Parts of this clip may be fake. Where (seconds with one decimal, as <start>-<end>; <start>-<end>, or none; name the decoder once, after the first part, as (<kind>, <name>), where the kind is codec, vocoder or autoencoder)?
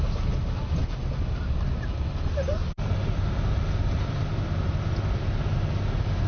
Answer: none